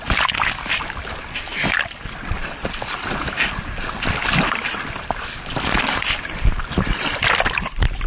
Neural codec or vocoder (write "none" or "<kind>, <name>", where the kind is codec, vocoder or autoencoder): none